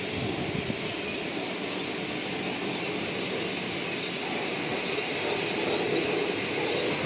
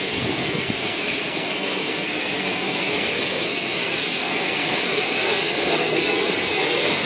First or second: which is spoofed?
second